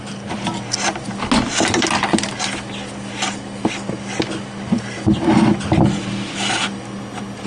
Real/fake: real